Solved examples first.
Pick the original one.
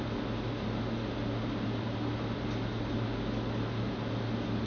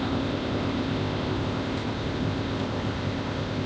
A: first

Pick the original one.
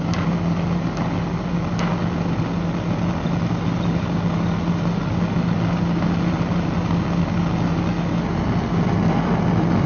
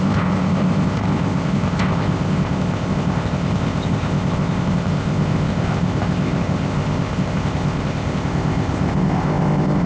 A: first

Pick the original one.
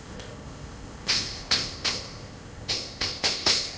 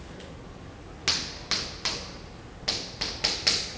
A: second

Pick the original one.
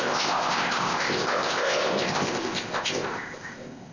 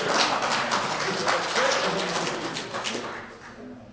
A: second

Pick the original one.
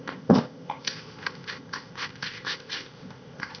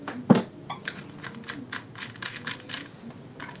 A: second